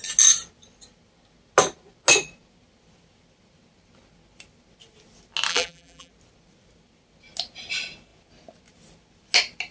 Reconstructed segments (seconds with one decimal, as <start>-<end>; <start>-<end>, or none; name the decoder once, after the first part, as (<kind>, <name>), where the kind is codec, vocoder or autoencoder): 5.5-6.1 (vocoder, BigVGAN v2)